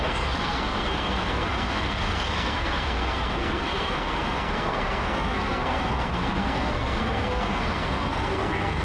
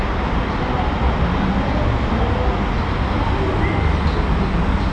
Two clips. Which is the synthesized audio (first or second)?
first